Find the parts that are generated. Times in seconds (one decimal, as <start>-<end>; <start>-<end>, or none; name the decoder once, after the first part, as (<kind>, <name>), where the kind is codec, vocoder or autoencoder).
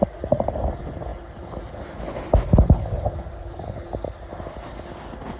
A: none